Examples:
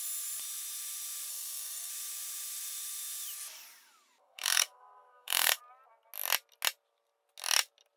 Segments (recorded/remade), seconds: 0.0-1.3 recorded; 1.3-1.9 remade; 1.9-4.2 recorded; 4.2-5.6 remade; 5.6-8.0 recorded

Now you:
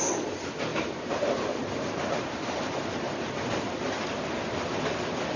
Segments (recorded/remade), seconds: 0.0-0.7 recorded; 0.7-3.9 remade; 3.9-5.4 recorded

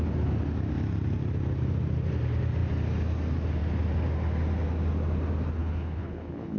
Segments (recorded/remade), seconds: 0.0-5.6 recorded; 5.6-6.6 remade

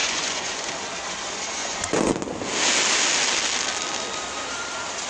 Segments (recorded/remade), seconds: 0.0-0.7 remade; 0.7-1.6 recorded; 1.6-2.1 remade; 2.1-5.1 recorded

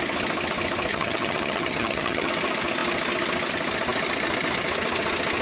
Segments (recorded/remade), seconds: 0.0-0.9 recorded; 0.9-2.3 remade; 2.3-5.4 recorded